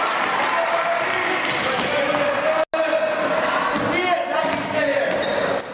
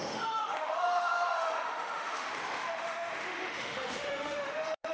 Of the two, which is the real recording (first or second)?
first